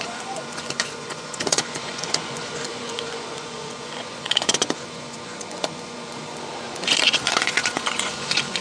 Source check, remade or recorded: remade